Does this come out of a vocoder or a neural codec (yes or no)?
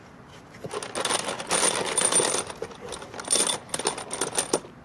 no